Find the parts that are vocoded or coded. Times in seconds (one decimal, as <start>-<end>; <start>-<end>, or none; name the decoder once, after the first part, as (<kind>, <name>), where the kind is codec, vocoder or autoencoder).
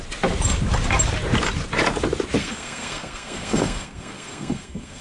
2.4-5.0 (codec, SNAC)